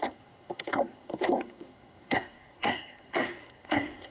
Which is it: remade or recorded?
remade